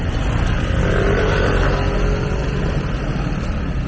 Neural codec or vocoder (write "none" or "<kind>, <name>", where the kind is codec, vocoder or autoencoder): none